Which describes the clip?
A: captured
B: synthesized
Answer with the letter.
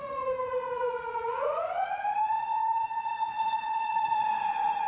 B